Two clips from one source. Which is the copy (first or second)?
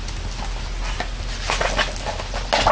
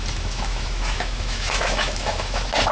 second